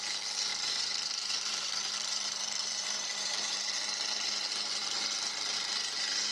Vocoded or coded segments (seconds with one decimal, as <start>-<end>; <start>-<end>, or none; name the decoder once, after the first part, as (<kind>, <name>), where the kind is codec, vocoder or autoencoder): 0.5-4.3 (vocoder, BigVGAN v2)